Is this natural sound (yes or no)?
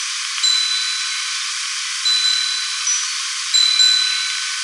yes